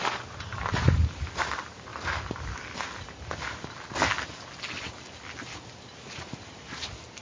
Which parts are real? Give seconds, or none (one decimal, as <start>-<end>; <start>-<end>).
1.9-6.2